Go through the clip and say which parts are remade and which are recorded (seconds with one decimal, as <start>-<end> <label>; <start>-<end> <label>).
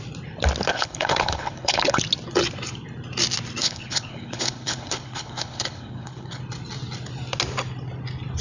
0.0-0.7 recorded; 0.7-2.0 remade; 2.0-3.6 recorded; 3.6-6.4 remade; 6.4-8.4 recorded